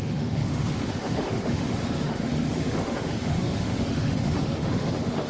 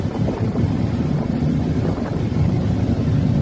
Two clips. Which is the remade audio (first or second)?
first